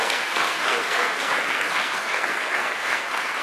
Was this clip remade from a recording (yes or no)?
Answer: yes